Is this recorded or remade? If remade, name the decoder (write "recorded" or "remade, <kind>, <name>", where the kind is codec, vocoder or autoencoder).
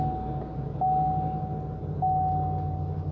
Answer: recorded